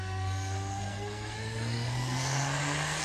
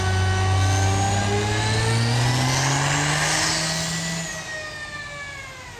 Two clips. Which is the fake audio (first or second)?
first